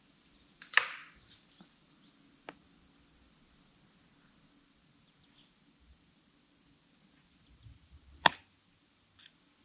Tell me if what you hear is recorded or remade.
remade